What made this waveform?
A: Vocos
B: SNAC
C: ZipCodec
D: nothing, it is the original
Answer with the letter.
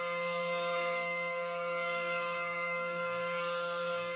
B